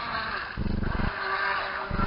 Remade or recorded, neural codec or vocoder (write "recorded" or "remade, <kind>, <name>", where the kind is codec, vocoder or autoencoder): recorded